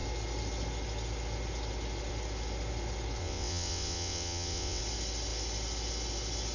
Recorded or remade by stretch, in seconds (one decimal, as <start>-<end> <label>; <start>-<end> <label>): 0.0-3.2 recorded; 3.2-4.8 remade; 4.8-6.5 recorded